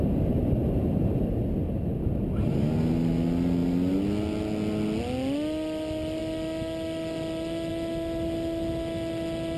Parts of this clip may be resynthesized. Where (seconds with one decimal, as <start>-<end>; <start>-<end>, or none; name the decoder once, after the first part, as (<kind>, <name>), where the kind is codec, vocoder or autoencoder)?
none